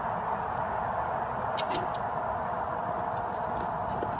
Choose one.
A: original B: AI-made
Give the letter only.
A